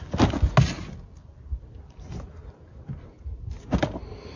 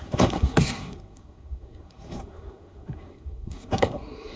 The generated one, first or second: second